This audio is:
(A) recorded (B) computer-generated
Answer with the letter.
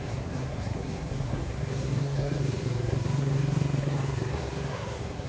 B